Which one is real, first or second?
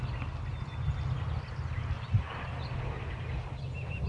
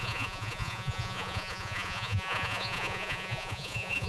first